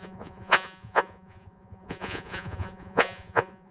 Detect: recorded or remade remade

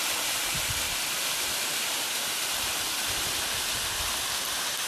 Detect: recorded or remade recorded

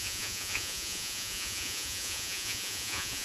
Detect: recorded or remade remade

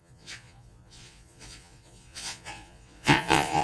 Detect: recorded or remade remade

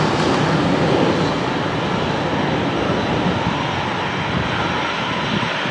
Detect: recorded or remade recorded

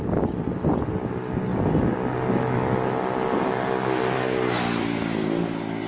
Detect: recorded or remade recorded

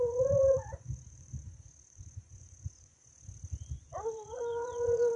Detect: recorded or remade remade